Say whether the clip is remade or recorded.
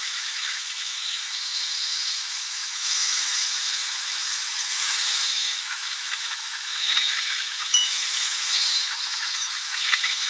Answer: remade